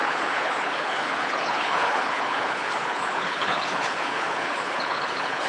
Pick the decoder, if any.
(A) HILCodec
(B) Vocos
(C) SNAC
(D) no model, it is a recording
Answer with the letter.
A